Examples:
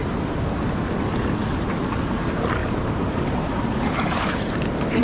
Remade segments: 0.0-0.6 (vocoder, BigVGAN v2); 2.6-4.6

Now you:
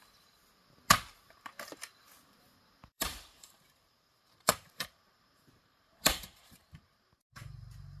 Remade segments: 2.9-8.0 (vocoder, BigVGAN v2)

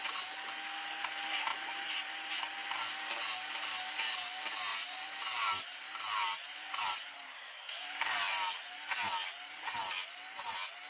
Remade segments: 1.5-2.4 (vocoder, BigVGAN v2); 4.7-8.5

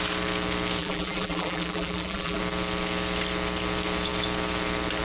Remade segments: 0.8-2.4 (vocoder, BigVGAN v2)